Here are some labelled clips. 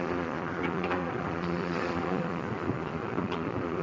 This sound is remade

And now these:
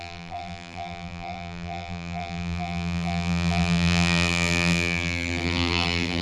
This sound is remade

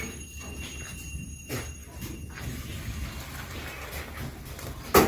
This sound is recorded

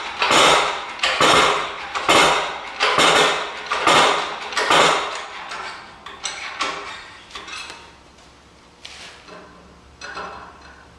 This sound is recorded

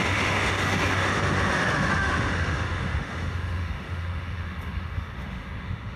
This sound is remade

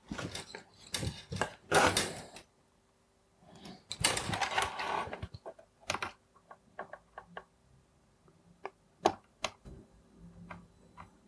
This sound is recorded